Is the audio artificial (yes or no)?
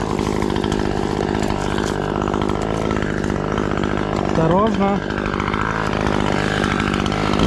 no